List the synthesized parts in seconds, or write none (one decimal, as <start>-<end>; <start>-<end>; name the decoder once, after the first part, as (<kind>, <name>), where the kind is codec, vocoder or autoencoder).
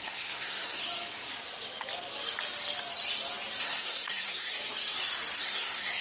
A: 0.0-0.8 (codec, SNAC); 3.6-4.5; 5.4-6.0